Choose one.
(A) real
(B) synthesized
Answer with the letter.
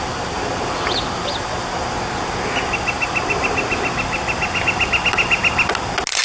A